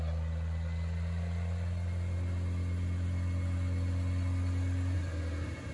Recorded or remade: recorded